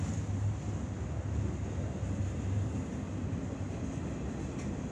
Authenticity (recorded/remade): recorded